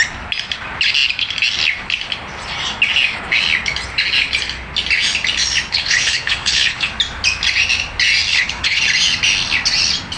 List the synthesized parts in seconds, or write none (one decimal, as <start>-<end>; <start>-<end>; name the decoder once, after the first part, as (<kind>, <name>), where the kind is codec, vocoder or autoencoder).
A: 5.7-6.9 (codec, HILCodec); 8.3-8.8

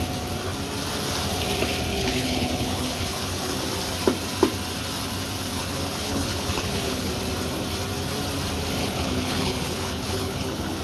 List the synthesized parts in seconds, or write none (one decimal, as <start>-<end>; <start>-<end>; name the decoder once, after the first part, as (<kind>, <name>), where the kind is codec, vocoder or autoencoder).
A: 1.9-3.5 (codec, HILCodec); 5.5-7.1; 8.8-10.8

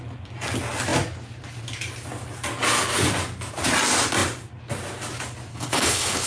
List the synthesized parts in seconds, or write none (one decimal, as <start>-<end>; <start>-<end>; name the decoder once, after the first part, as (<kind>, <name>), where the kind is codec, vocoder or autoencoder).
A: 5.5-6.3 (codec, HILCodec)

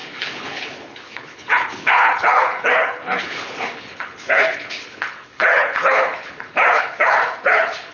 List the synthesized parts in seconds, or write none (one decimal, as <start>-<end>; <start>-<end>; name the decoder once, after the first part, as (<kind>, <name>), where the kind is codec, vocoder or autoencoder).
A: 0.0-7.9 (codec, HILCodec)

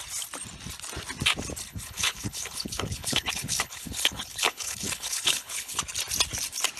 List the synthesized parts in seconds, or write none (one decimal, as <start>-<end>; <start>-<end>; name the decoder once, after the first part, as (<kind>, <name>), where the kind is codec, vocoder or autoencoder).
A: 1.7-5.8 (codec, HILCodec)

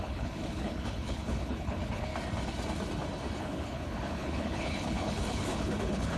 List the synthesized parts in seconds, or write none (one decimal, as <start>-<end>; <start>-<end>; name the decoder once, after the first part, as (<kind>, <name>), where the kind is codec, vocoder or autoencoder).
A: 0.0-2.1 (codec, HILCodec); 3.4-6.2

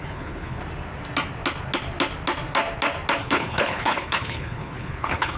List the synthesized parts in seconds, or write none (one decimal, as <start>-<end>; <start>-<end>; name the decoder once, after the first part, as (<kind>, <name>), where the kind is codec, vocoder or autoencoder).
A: 0.0-0.6 (codec, HILCodec); 3.2-5.4